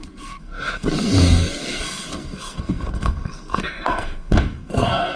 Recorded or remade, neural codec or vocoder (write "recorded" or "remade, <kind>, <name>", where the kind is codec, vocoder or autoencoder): remade, codec, SNAC